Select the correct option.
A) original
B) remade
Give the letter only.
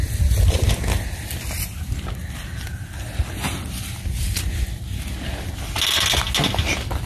A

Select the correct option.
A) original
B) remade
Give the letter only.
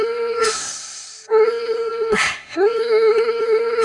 B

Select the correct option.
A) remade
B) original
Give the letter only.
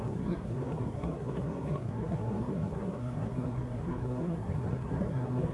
A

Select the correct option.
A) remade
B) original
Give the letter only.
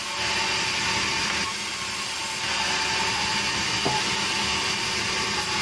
B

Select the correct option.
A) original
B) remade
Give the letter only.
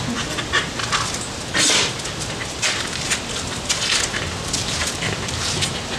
A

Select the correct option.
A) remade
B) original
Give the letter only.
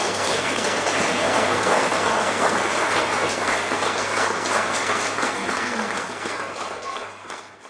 A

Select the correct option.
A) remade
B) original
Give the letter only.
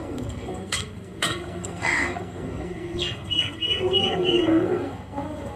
A